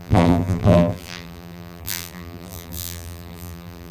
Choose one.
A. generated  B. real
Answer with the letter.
A